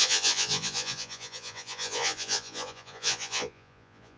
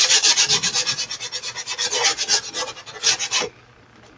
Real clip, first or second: second